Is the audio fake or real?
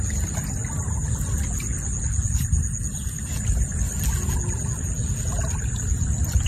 real